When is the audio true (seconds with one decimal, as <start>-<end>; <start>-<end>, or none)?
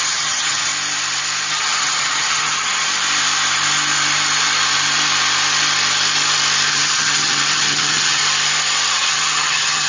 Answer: 0.7-1.5; 2.9-6.7; 8.2-8.9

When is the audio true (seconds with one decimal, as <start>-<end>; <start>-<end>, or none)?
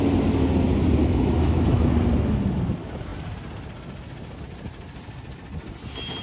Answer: 0.0-1.0; 1.9-6.2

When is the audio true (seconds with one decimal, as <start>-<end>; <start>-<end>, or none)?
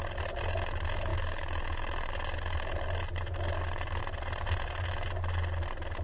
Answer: 0.0-6.0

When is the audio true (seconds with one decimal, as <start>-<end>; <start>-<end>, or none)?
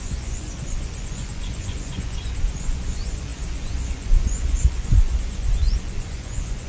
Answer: none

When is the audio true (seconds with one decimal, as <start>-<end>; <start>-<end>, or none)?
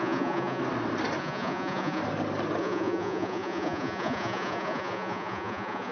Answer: 0.6-1.2; 2.0-2.6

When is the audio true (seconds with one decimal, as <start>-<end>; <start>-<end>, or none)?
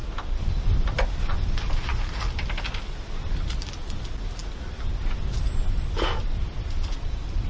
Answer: 0.0-7.5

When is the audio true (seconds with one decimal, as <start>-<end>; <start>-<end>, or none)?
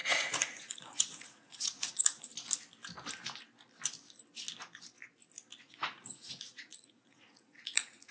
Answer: 2.3-5.6